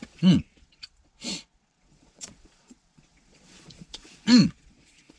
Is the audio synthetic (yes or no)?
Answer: yes